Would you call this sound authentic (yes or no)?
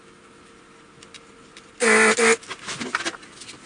yes